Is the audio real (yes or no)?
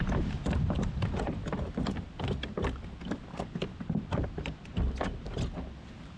yes